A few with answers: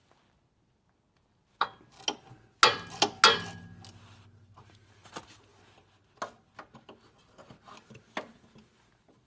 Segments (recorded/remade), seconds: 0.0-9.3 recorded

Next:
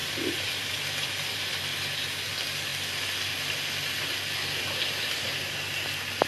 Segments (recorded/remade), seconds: 0.0-1.6 remade; 1.6-6.3 recorded